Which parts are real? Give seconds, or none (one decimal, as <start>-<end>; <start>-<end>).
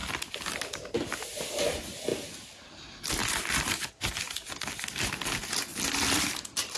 0.0-6.8